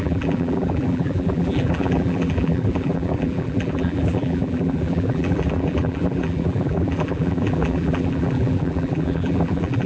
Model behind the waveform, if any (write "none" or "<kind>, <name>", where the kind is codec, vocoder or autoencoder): vocoder, BigVGAN v2